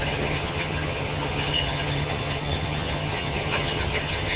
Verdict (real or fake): fake